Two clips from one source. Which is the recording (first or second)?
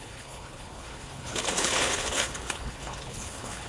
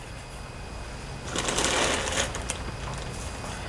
second